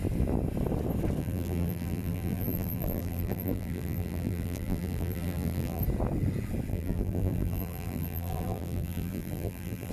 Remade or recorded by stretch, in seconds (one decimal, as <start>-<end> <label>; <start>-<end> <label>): 0.0-1.2 recorded; 1.2-5.8 remade; 5.8-6.7 recorded; 6.7-9.9 remade